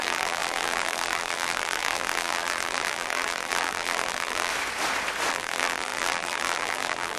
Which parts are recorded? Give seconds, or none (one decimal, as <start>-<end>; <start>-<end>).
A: 4.5-5.3